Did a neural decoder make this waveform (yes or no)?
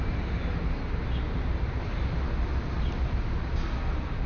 no